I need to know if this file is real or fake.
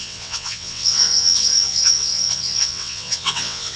fake